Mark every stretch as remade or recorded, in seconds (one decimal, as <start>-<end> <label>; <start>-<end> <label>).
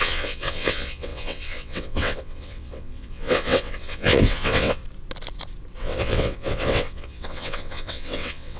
0.0-4.8 remade; 4.8-5.8 recorded; 5.8-8.6 remade